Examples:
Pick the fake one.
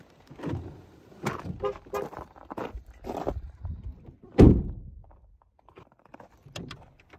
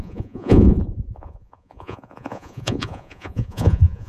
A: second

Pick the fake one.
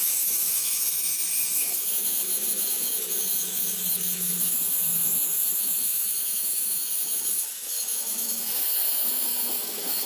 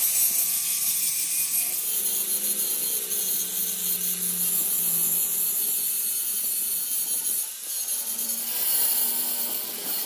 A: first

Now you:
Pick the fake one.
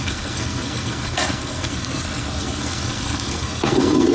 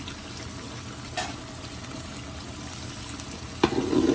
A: first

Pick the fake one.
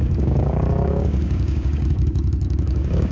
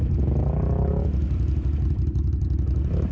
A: first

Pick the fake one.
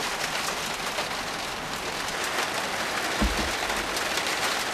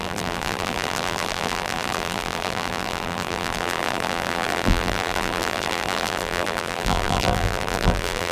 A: second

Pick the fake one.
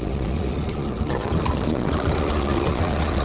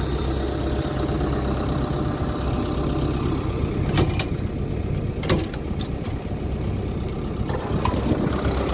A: first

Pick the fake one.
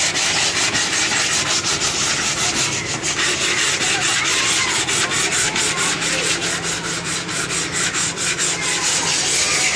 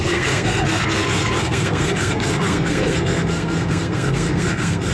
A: second